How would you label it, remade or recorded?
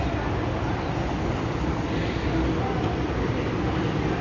recorded